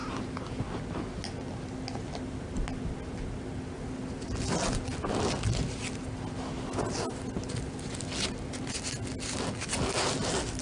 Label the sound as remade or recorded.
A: recorded